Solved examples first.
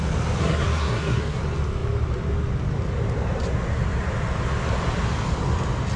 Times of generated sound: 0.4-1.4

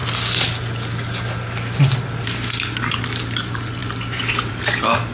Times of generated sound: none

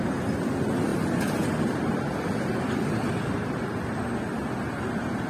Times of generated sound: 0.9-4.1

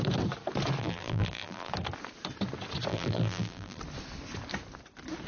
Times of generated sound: 0.8-1.7; 2.9-3.8

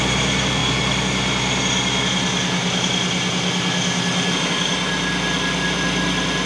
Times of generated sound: none

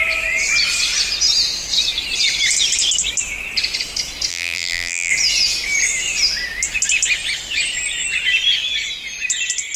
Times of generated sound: 4.3-5.1

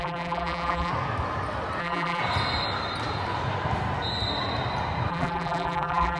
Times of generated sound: 0.0-0.9; 1.8-2.2; 5.1-6.2